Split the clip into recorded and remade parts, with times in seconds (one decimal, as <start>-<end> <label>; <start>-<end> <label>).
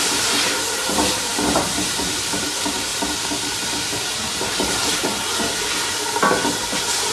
0.0-2.9 remade; 2.9-7.1 recorded